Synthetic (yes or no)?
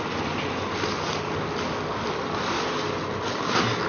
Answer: no